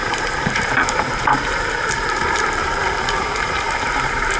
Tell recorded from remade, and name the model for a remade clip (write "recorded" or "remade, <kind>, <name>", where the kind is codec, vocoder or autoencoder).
remade, vocoder, BigVGAN v2